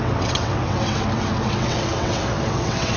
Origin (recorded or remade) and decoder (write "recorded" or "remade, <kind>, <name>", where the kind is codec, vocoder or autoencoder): remade, vocoder, WaveNeXt